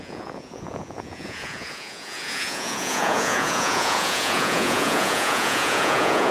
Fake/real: fake